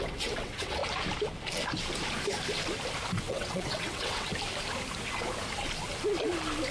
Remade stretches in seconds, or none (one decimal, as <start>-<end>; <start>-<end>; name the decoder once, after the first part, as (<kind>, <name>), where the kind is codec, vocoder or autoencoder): 0.0-0.8 (vocoder, WaveNeXt); 3.1-4.3